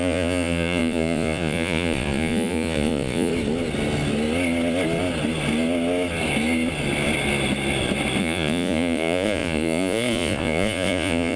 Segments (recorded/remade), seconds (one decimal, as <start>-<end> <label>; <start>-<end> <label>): 0.0-3.3 remade; 3.3-8.2 recorded; 8.2-11.4 remade